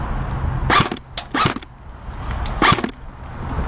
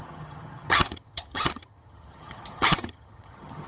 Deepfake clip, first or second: second